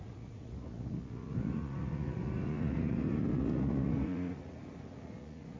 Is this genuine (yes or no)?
no